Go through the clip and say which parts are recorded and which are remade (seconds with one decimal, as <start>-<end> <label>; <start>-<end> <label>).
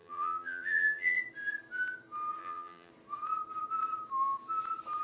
0.0-1.2 remade; 1.2-2.4 recorded; 2.4-2.9 remade; 2.9-5.0 recorded